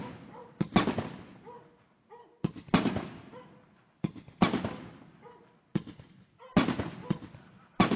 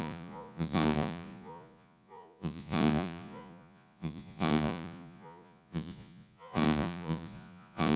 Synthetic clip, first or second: second